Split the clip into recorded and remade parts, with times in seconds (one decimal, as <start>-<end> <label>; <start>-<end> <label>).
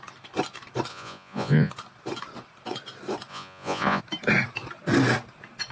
0.0-0.9 recorded; 0.9-1.7 remade; 1.7-3.3 recorded; 3.3-4.0 remade; 4.0-5.7 recorded